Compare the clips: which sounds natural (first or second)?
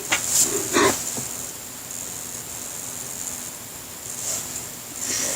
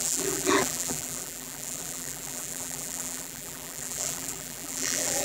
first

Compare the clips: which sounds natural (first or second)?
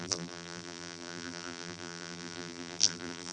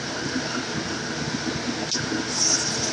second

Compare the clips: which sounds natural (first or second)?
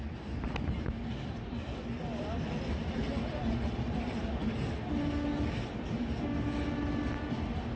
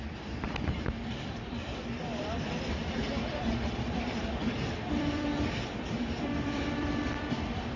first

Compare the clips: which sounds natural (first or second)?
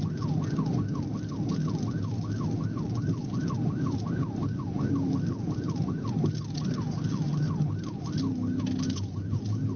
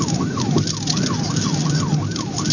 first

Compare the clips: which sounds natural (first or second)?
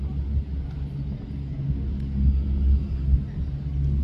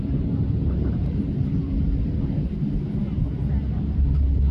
first